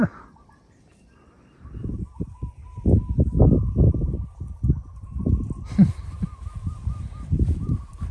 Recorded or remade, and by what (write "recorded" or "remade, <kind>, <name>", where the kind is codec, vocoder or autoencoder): remade, vocoder, BigVGAN v2